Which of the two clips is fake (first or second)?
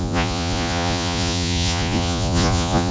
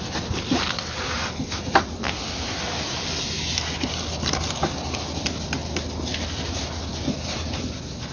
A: first